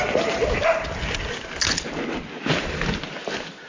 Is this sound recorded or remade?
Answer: recorded